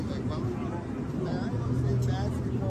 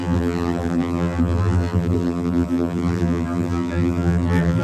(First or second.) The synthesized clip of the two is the second